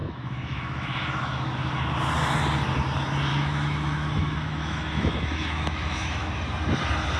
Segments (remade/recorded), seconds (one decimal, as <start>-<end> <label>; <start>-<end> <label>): 0.0-1.7 remade; 1.7-3.3 recorded; 3.3-6.3 remade; 6.3-7.2 recorded